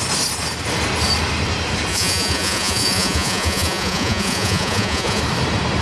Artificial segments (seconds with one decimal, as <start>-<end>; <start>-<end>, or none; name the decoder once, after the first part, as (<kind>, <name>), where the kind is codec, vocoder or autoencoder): 1.9-5.2 (vocoder, Vocos)